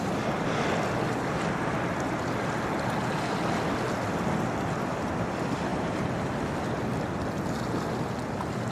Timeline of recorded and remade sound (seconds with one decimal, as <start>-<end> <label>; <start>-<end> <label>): 0.0-5.7 recorded; 5.7-6.5 remade; 6.5-8.7 recorded